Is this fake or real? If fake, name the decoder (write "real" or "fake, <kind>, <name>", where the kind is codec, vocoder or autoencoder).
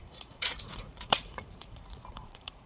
fake, vocoder, Vocos